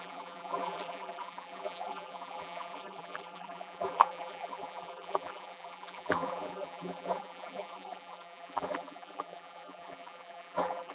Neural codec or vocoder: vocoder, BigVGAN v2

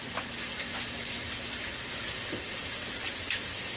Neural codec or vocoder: none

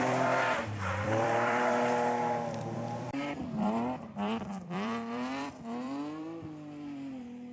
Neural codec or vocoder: vocoder, BigVGAN v2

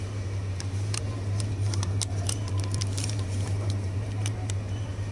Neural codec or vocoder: vocoder, BigVGAN v2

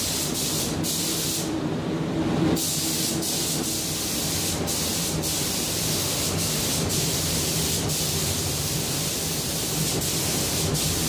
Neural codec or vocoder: vocoder, BigVGAN v2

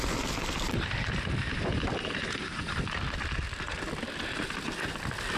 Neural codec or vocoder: vocoder, BigVGAN v2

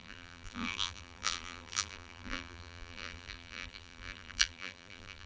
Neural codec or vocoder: vocoder, BigVGAN v2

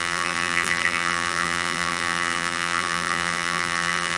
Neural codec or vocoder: vocoder, BigVGAN v2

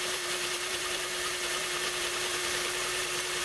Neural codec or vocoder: vocoder, BigVGAN v2